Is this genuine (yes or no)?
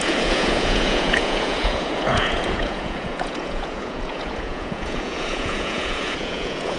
no